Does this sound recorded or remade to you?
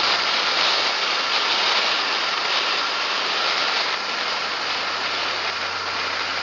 recorded